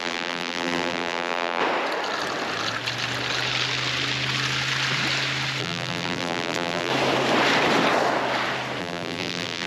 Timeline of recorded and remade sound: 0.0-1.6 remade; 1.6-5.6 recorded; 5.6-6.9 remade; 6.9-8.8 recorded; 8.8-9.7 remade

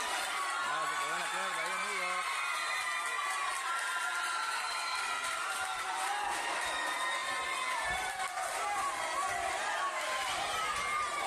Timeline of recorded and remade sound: 0.0-11.3 recorded

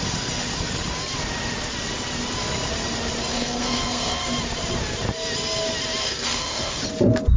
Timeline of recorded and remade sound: 0.0-3.3 recorded; 3.3-4.3 remade; 4.3-6.0 recorded; 6.0-6.8 remade; 6.8-7.4 recorded

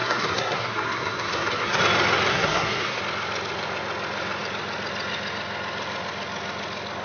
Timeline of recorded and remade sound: 0.0-1.8 remade; 1.8-2.3 recorded; 2.3-3.0 remade; 3.0-7.0 recorded

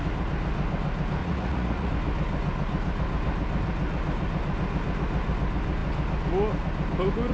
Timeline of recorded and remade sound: 0.0-1.2 recorded; 1.2-1.9 remade; 1.9-7.3 recorded

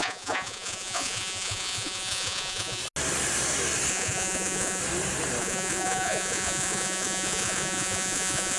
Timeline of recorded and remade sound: 0.0-2.8 remade; 2.8-3.9 recorded; 3.9-4.8 remade; 4.8-5.4 recorded; 5.4-8.6 remade